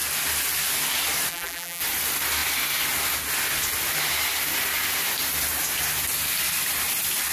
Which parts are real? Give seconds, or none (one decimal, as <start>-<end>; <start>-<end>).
0.0-1.3; 1.8-7.3